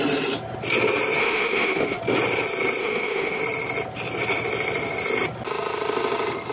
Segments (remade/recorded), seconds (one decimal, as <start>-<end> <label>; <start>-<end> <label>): 0.0-1.2 recorded; 1.2-2.0 remade; 2.0-2.8 recorded; 2.8-3.4 remade; 3.4-6.5 recorded